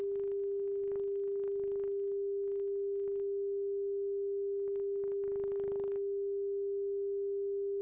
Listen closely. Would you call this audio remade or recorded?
recorded